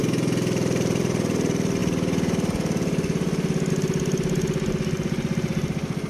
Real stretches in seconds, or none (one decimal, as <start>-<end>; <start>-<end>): 0.0-6.1